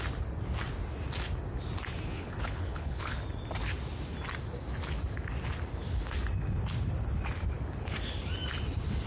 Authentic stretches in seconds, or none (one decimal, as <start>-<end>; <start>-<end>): 0.0-2.1; 3.2-9.1